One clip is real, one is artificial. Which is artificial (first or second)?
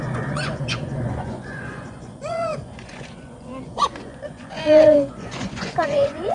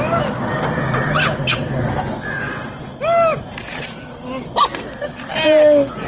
first